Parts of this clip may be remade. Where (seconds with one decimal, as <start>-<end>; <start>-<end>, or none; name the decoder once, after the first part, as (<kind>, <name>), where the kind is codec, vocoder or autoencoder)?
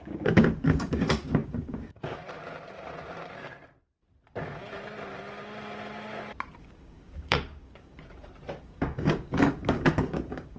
0.0-2.2 (codec, DAC); 6.6-8.0; 8.6-10.6